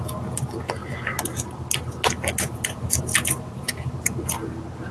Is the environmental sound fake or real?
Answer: real